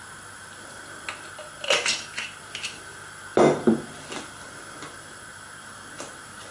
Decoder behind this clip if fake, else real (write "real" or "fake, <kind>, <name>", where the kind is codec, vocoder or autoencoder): real